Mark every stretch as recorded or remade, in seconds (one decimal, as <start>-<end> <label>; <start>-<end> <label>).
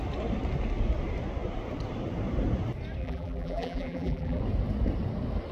0.0-3.0 recorded; 3.0-4.4 remade; 4.4-5.5 recorded